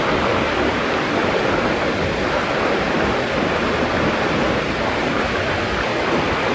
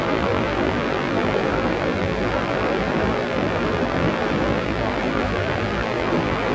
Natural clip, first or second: first